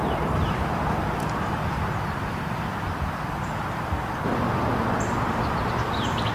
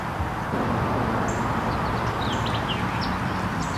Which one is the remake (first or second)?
first